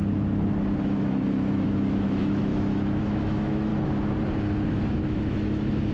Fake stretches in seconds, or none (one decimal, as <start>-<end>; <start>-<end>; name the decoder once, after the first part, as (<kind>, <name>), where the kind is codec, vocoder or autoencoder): 0.8-3.7 (autoencoder, DAC-VAE); 4.7-5.9